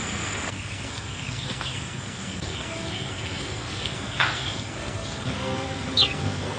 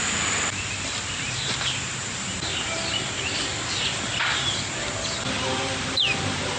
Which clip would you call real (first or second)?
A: second